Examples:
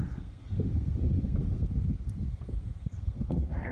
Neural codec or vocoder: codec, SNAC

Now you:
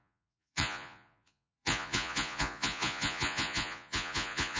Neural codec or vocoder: vocoder, Vocos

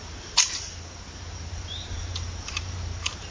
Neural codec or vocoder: vocoder, BigVGAN v2